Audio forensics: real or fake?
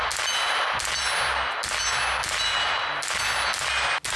real